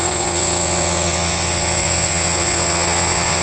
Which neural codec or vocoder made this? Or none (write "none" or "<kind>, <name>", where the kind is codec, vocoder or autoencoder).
vocoder, WaveNeXt